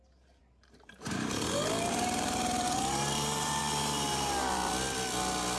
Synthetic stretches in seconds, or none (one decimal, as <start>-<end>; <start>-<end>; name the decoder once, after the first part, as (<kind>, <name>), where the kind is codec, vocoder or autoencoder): 0.4-3.6 (vocoder, BigVGAN v2); 4.1-4.7